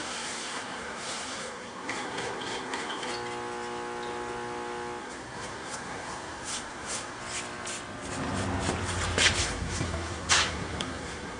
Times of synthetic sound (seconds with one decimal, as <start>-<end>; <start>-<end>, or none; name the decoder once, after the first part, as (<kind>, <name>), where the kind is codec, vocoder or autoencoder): 0.0-3.1 (codec, SNAC); 5.0-7.2; 9.4-11.4